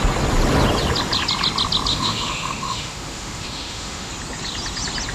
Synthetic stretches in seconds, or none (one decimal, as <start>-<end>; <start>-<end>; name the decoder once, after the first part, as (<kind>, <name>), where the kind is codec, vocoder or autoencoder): 1.9-4.1 (autoencoder, DAC-VAE)